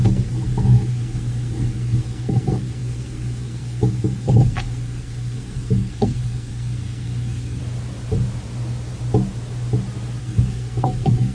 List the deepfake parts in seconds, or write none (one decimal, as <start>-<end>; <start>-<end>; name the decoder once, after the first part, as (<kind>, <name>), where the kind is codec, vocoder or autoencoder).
0.0-7.6 (codec, SNAC); 10.2-11.3